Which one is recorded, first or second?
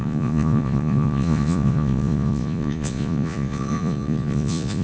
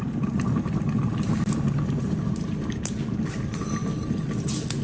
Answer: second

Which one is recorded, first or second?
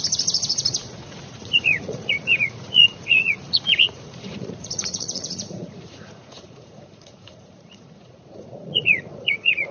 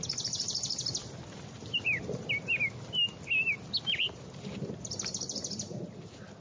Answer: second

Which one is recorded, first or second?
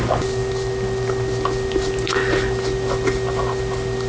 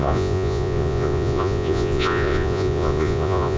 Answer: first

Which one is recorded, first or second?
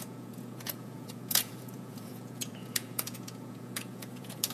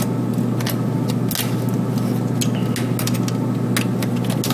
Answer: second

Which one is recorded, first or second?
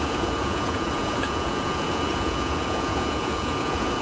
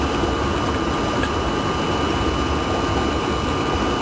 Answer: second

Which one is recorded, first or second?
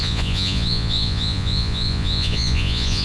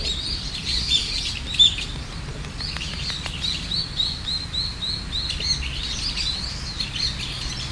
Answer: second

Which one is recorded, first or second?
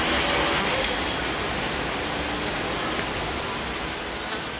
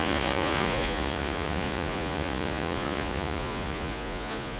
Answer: first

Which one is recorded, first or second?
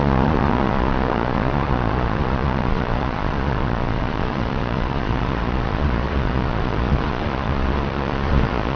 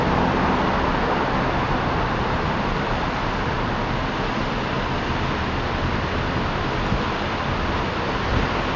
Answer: second